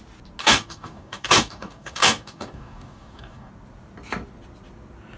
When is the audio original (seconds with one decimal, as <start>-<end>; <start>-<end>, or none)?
0.0-0.4; 3.5-5.2